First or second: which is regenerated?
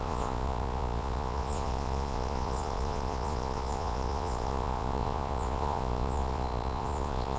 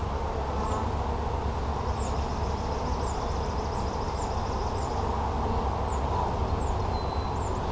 first